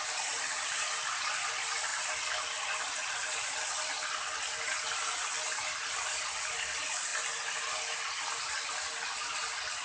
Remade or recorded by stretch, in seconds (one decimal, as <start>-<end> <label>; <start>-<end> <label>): 0.0-9.8 recorded